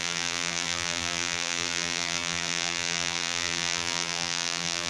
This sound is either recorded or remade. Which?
remade